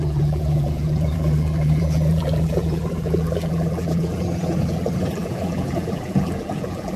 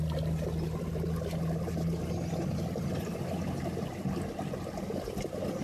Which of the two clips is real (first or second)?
second